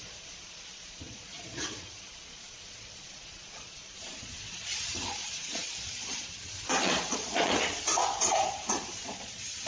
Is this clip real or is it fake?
fake